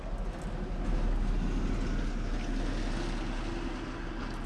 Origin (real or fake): real